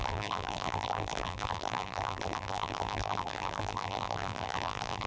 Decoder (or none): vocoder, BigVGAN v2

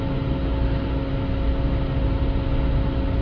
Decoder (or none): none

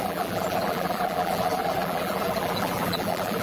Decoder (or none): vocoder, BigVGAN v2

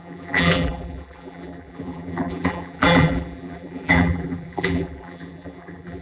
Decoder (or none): vocoder, BigVGAN v2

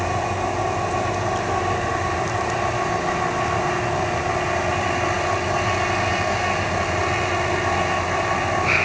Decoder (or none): none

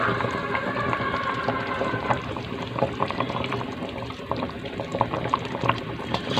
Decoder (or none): vocoder, BigVGAN v2